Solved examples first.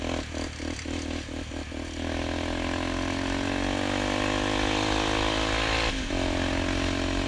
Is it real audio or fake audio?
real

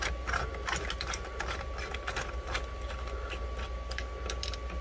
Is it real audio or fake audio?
real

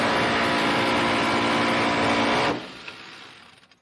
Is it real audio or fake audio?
real